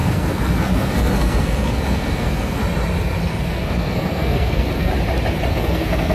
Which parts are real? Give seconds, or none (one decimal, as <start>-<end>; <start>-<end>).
2.6-3.2; 4.9-5.5